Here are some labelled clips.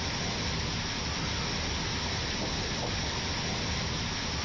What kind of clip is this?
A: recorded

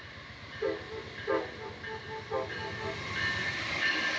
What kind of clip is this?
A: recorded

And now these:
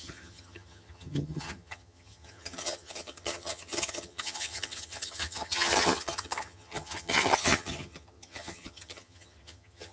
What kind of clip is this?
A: remade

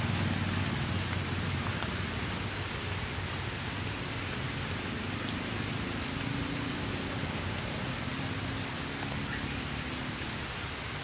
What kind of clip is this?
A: recorded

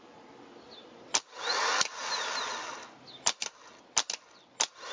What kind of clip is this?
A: recorded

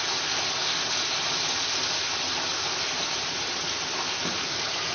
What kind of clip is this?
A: recorded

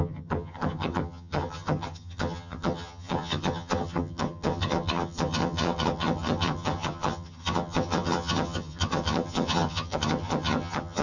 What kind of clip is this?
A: remade